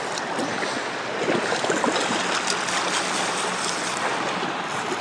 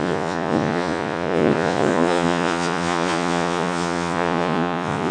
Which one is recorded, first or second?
first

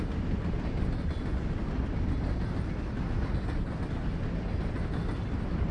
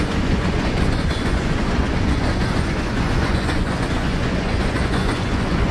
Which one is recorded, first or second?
first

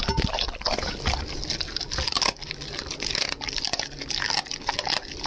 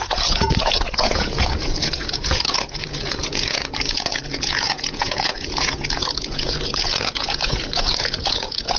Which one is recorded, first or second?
first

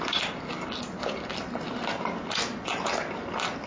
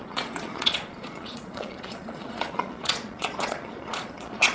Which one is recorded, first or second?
first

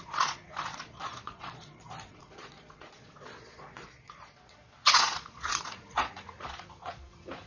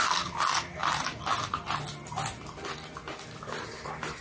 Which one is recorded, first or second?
second